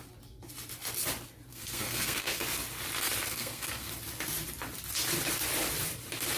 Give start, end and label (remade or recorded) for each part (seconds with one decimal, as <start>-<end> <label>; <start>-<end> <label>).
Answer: 0.0-1.5 recorded; 1.5-2.4 remade; 2.4-3.3 recorded; 3.3-3.9 remade; 3.9-6.4 recorded